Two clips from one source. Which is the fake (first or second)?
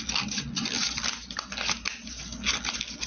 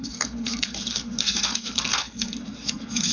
second